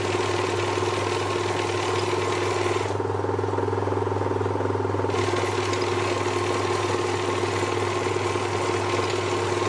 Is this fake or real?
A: real